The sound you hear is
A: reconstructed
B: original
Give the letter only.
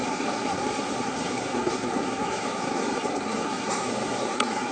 A